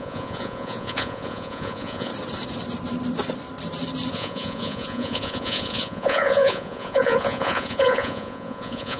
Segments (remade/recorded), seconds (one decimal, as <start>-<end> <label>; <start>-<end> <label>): 0.0-2.1 remade; 2.1-4.1 recorded; 4.1-9.0 remade